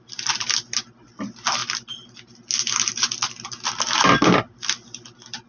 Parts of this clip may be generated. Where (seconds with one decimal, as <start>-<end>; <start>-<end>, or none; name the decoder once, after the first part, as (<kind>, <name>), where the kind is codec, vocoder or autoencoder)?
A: none